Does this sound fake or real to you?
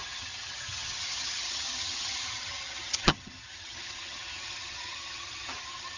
fake